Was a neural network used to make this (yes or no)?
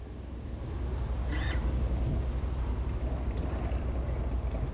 no